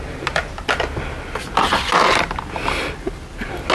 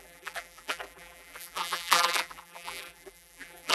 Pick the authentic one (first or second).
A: first